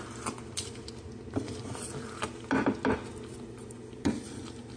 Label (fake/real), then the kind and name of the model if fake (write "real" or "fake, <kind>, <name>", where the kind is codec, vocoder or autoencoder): real